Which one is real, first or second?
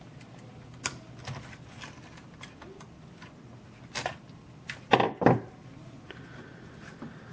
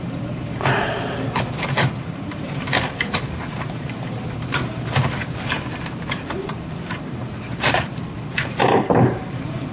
first